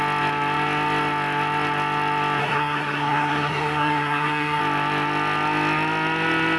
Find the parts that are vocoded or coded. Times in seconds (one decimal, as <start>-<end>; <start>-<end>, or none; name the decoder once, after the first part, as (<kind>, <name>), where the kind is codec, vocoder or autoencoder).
2.4-4.6 (codec, SNAC)